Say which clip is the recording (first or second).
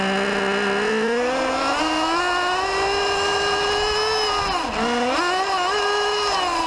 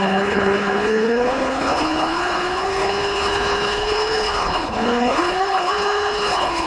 first